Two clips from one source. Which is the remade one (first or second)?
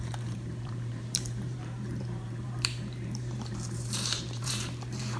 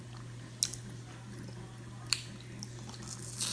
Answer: first